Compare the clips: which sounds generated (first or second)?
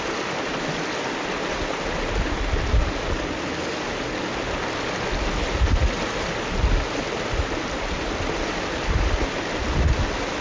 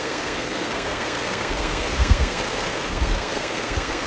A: second